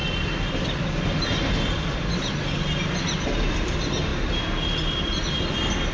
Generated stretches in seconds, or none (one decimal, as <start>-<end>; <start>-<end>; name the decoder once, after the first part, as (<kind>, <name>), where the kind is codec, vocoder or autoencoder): none